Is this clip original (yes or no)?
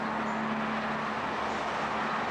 yes